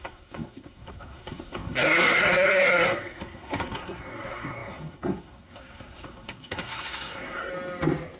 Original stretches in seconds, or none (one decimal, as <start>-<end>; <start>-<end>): 7.5-8.2